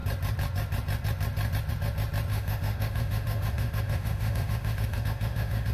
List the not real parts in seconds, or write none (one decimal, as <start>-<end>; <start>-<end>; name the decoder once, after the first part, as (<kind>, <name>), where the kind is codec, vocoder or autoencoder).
2.3-5.7 (autoencoder, DAC-VAE)